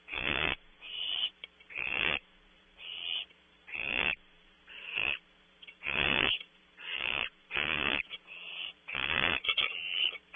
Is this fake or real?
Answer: fake